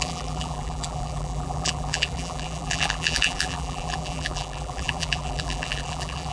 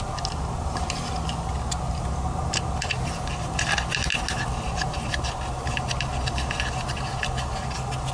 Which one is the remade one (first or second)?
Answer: first